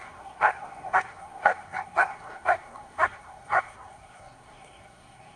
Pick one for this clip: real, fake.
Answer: fake